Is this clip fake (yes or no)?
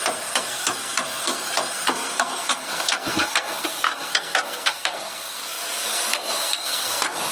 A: yes